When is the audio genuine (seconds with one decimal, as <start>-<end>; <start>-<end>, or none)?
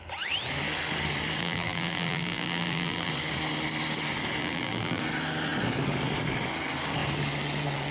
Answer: 0.0-1.4; 3.1-4.4; 5.0-7.9